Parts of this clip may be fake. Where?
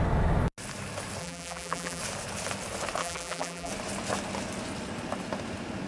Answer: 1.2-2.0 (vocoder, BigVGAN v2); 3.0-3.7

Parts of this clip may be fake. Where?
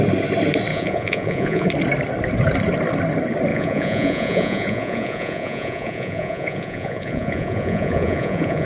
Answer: 0.7-1.7 (vocoder, Vocos); 3.5-8.7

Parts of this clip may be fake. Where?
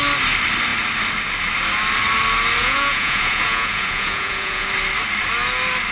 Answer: 2.6-4.7 (vocoder, Vocos)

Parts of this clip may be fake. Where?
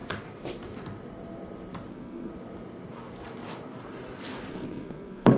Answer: 1.9-2.3 (codec, SNAC); 4.5-5.4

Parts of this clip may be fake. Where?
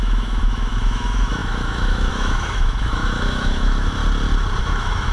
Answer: 0.0-4.0 (autoencoder, DAC-VAE); 4.6-5.1